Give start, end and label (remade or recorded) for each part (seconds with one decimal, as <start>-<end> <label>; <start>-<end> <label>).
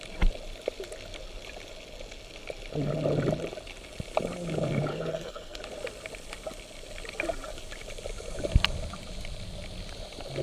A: 0.0-4.9 recorded; 4.9-5.6 remade; 5.6-10.4 recorded